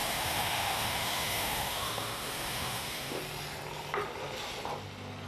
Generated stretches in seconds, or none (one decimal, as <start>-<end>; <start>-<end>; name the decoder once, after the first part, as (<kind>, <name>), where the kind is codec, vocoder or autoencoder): 0.0-3.2 (autoencoder, DAC-VAE)